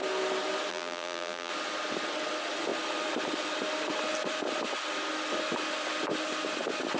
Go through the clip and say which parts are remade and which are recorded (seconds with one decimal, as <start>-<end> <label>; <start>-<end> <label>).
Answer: 0.0-0.7 recorded; 0.7-1.5 remade; 1.5-7.0 recorded